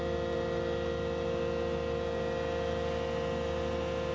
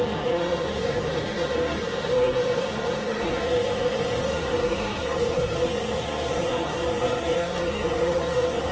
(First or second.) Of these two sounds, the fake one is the second